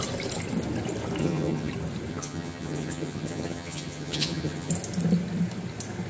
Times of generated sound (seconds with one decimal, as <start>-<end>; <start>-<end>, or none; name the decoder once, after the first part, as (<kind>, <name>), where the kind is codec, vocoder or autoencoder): 1.2-1.7 (vocoder, HiFi-GAN); 2.1-4.7